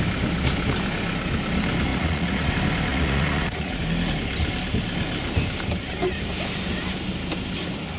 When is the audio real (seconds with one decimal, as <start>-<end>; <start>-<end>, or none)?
0.0-1.9; 2.5-2.9; 3.8-8.0